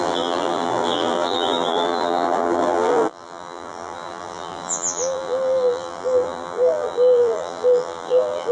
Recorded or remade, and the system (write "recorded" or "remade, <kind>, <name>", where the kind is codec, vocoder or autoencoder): remade, vocoder, BigVGAN v2